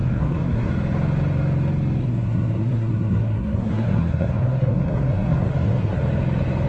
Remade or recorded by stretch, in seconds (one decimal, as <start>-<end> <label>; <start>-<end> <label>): 0.0-0.7 remade; 0.7-2.0 recorded; 2.0-6.0 remade; 6.0-6.7 recorded